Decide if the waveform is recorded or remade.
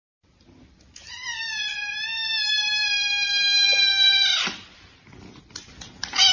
recorded